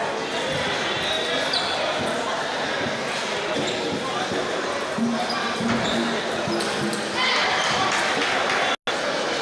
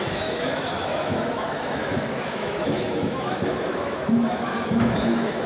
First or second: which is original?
first